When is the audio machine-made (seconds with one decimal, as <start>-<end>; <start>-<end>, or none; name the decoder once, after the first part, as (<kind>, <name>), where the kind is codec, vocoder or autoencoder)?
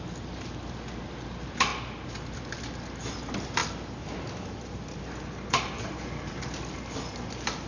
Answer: none